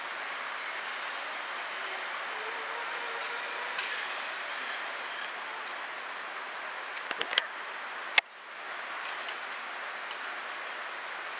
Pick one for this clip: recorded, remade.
recorded